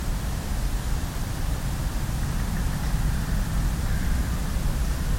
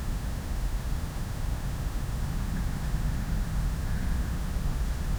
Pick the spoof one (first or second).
second